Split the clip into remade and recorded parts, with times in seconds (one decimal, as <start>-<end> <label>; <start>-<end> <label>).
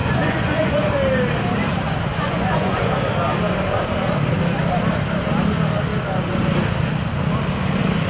0.0-0.9 remade; 0.9-2.1 recorded; 2.1-2.9 remade; 2.9-8.1 recorded